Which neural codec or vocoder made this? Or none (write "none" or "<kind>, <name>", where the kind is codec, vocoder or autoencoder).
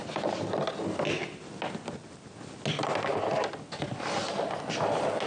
none